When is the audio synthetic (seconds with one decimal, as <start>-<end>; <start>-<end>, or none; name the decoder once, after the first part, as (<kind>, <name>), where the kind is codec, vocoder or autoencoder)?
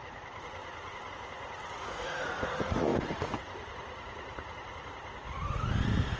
0.0-0.6 (vocoder, Vocos); 1.1-6.2